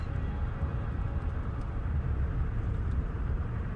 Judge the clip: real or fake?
fake